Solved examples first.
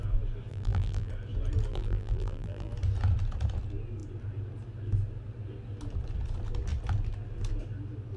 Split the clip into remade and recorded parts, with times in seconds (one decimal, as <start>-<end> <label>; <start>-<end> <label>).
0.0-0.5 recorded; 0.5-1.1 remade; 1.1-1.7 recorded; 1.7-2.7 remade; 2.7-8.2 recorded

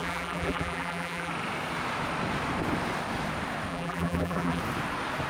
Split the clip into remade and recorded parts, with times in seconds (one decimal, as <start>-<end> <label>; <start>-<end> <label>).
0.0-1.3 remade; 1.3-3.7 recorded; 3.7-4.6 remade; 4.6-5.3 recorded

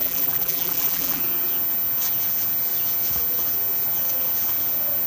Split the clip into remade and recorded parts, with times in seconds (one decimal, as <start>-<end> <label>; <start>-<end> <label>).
0.0-1.2 remade; 1.2-5.1 recorded